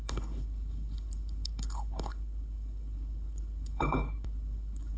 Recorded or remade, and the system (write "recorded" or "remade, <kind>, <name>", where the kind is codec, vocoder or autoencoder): remade, codec, HILCodec